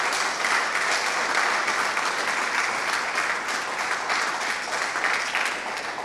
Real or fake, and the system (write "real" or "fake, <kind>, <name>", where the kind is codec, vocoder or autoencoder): real